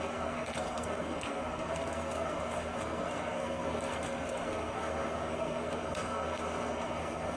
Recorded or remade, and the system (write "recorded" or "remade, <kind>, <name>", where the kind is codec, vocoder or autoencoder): remade, codec, SNAC